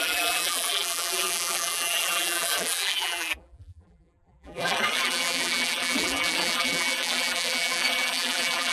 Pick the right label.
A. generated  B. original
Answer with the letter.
A